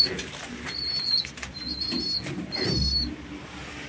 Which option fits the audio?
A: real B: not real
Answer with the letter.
A